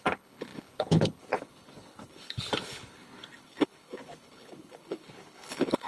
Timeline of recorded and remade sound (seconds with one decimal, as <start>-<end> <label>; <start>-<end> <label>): 0.0-5.9 remade